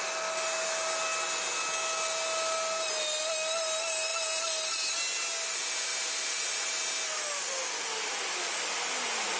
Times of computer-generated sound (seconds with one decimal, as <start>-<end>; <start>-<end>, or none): none